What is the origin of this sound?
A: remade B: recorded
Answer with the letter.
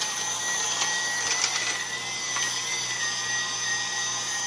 B